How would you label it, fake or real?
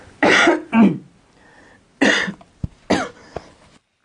real